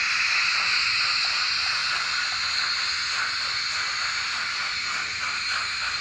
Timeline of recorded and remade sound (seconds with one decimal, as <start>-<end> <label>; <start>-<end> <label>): 0.0-6.0 recorded